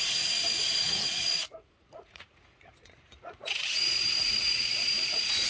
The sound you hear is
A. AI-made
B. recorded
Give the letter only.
A